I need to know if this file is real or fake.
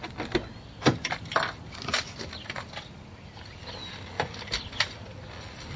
real